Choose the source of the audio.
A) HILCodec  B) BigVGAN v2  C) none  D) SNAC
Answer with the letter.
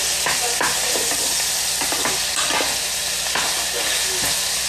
C